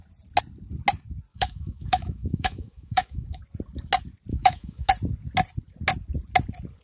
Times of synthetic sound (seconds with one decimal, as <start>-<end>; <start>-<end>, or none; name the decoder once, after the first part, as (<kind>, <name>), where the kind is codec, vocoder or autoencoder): 1.3-3.4 (autoencoder, DAC-VAE); 4.3-4.9